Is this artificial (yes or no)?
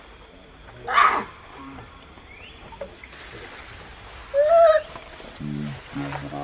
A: no